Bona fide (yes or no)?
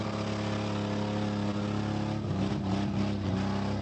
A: yes